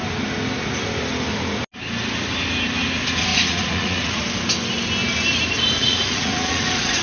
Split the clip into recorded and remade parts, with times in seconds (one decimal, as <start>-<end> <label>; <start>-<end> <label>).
0.0-3.3 recorded; 3.3-4.2 remade; 4.2-5.8 recorded; 5.8-7.0 remade